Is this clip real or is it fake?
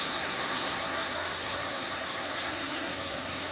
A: fake